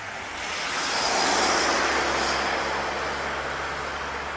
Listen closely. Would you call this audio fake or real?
real